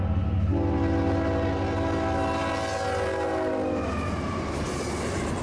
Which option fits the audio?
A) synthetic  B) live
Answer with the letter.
B